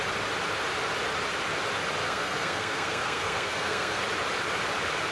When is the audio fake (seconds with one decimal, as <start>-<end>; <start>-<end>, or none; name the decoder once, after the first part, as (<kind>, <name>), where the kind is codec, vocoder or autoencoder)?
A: 2.0-4.0 (codec, SNAC)